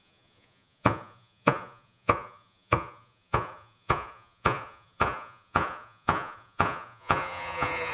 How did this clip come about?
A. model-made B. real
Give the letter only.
A